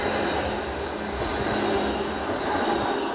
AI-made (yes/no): no